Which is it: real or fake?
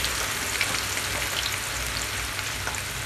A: real